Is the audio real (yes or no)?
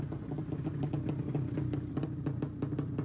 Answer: yes